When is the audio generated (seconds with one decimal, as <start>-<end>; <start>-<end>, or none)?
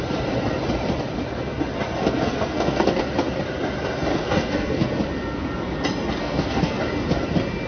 2.0-3.0; 4.1-4.9; 6.2-6.8